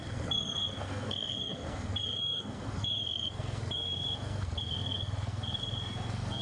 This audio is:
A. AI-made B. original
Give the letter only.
A